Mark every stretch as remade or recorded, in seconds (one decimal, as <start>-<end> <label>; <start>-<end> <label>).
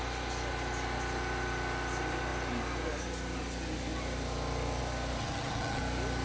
0.0-5.2 recorded; 5.2-5.8 remade; 5.8-6.2 recorded